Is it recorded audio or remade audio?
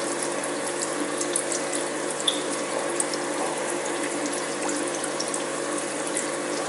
remade